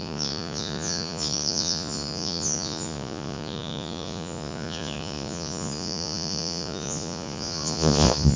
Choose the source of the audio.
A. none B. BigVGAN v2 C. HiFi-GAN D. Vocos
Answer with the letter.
D